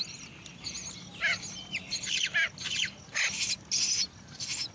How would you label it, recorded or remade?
recorded